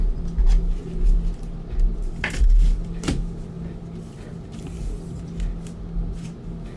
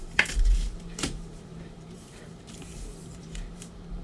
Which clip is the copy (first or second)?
second